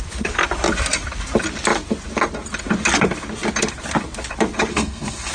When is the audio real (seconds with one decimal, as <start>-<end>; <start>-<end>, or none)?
0.0-4.7